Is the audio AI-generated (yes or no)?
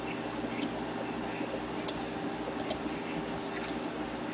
no